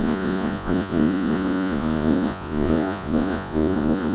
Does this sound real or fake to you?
fake